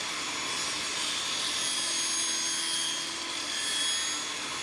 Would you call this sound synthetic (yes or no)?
no